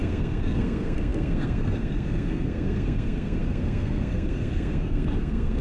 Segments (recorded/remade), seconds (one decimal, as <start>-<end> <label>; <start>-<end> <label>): 0.0-5.6 remade

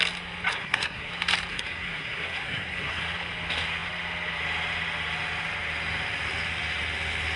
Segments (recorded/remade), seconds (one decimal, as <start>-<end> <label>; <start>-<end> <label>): 0.0-0.5 recorded; 0.5-1.1 remade; 1.1-1.5 recorded; 1.5-3.0 remade; 3.0-7.4 recorded

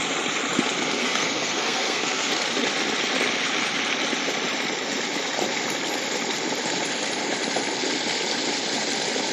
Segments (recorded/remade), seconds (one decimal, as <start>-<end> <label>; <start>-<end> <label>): 0.0-1.0 recorded; 1.0-2.3 remade; 2.3-9.3 recorded

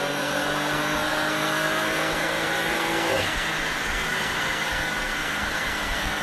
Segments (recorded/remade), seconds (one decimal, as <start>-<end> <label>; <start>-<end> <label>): 0.0-6.2 remade

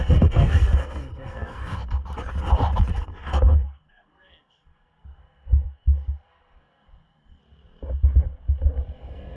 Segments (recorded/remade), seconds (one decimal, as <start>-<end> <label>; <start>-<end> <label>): 0.0-2.0 remade; 2.0-2.9 recorded; 2.9-7.4 remade; 7.4-8.9 recorded; 8.9-9.4 remade

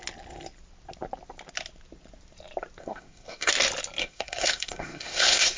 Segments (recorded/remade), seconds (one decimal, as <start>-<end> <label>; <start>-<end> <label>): 0.0-2.8 recorded; 2.8-3.5 remade; 3.5-4.0 recorded; 4.0-5.6 remade